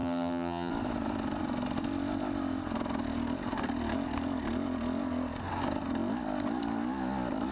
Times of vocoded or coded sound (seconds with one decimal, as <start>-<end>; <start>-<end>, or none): 0.0-0.7